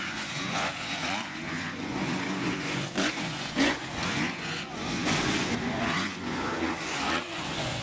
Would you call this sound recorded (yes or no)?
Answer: no